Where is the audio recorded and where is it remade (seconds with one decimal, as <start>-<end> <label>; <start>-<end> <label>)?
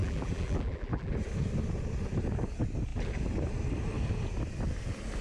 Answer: 0.0-1.1 remade; 1.1-5.2 recorded